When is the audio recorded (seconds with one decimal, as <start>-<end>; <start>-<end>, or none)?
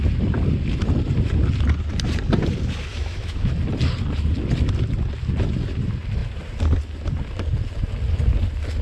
0.0-2.9; 3.5-8.8